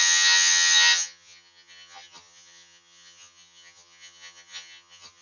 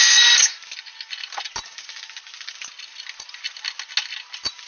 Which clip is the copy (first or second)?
first